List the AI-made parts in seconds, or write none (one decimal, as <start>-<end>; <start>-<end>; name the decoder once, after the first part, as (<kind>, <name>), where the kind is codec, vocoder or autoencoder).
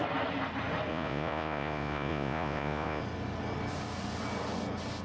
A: 0.9-3.0 (vocoder, Vocos)